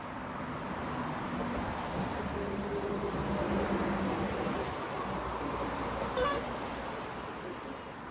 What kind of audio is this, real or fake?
real